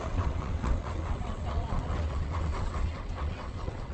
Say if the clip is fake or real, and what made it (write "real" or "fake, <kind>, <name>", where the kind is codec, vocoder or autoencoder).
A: fake, vocoder, WaveNeXt